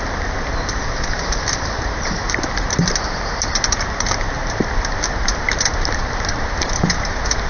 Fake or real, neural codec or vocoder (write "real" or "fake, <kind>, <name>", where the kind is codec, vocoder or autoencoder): fake, vocoder, BigVGAN v2